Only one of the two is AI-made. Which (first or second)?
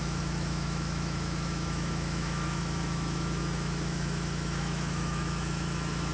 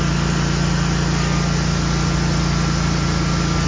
first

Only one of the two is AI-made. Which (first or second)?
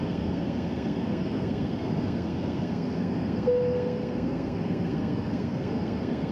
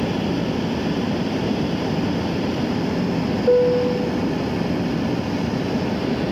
first